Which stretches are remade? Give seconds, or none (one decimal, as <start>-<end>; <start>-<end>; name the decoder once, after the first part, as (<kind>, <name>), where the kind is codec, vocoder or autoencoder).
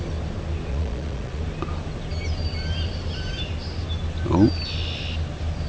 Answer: 0.7-1.4 (vocoder, Vocos)